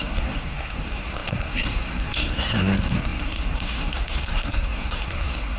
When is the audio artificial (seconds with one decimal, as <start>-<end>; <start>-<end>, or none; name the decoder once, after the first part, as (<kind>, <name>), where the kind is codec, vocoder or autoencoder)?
0.0-5.6 (codec, SNAC)